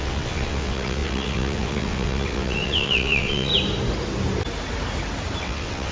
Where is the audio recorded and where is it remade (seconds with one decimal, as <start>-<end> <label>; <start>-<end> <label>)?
0.0-3.5 remade; 3.5-5.4 recorded; 5.4-5.9 remade